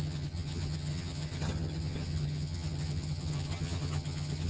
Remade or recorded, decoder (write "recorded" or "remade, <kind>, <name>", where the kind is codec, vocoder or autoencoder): remade, vocoder, HiFi-GAN